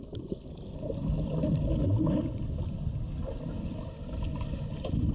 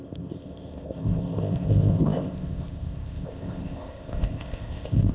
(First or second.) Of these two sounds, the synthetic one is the second